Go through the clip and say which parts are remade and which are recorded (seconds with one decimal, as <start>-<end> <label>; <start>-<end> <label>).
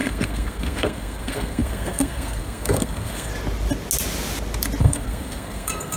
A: 0.0-3.3 remade; 3.3-4.8 recorded; 4.8-6.0 remade